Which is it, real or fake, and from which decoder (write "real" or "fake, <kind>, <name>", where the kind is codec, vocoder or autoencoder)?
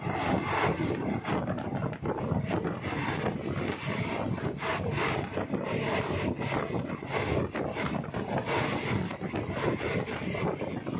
real